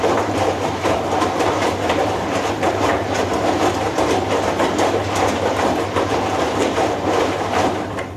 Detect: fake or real fake